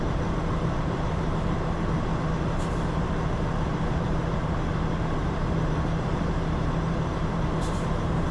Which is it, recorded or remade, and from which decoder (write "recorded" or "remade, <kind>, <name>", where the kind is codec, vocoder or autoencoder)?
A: remade, vocoder, BigVGAN v2